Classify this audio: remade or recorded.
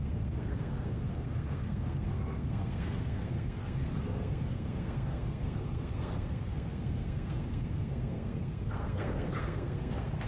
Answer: remade